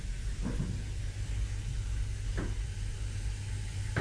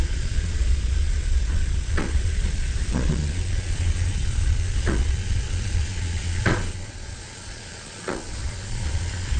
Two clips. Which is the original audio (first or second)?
first